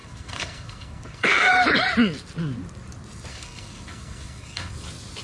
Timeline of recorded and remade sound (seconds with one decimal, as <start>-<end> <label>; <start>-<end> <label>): 0.0-1.5 remade; 1.5-3.3 recorded; 3.3-4.7 remade; 4.7-5.2 recorded